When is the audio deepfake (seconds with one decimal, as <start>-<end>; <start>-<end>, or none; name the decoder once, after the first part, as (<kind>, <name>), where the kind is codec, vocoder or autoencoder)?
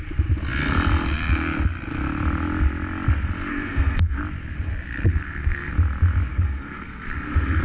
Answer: 3.5-4.2 (codec, SNAC); 5.1-5.7; 6.3-7.6